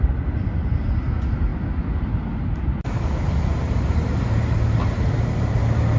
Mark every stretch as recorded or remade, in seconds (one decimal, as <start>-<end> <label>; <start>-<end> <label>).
0.0-6.0 recorded